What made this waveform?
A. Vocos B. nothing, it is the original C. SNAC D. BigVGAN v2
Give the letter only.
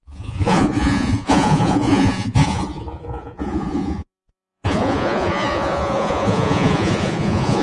A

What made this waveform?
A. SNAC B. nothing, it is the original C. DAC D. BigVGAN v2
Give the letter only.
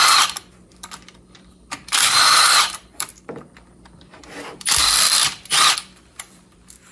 D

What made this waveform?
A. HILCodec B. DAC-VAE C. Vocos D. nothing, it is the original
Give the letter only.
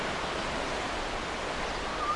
D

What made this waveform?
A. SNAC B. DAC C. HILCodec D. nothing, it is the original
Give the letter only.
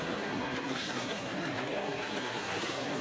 A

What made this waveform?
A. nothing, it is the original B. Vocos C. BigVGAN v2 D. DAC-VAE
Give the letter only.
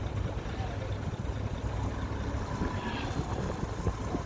A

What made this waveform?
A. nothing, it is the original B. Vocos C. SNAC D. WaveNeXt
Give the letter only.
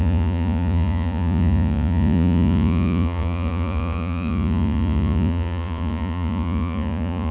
B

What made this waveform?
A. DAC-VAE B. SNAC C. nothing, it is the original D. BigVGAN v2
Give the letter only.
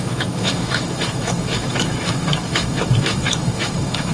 A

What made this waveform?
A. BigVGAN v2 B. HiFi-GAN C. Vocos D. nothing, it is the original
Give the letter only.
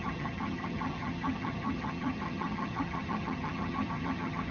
B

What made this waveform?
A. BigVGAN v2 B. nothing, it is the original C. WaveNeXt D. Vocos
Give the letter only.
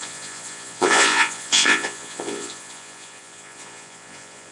D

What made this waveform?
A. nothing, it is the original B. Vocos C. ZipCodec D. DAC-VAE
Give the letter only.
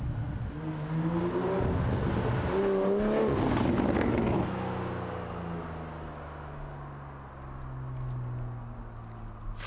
A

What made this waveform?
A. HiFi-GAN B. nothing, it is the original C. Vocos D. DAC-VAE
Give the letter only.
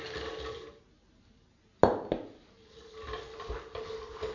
B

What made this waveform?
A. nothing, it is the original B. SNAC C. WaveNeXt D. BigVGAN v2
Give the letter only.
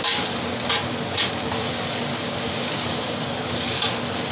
A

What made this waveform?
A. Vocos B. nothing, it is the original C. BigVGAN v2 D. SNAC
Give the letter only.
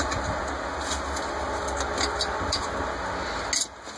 B